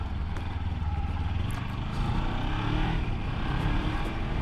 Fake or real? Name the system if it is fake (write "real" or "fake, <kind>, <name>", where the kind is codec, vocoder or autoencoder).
real